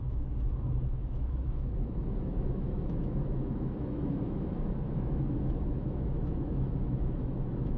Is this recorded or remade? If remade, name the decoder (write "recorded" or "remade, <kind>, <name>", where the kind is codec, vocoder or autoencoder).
remade, autoencoder, DAC-VAE